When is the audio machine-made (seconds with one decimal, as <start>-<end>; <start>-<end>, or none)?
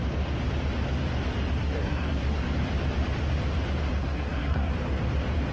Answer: 1.6-2.4; 4.0-4.7